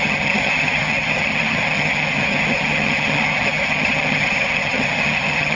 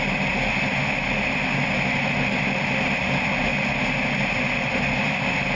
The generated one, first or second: first